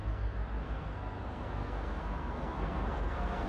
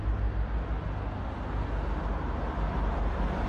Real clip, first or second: second